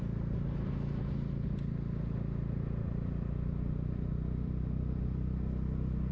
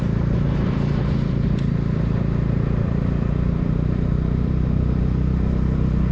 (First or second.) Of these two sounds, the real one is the first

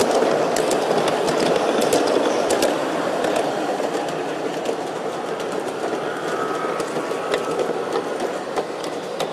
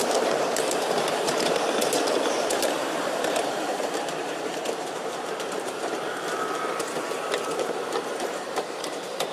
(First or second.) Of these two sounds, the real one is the first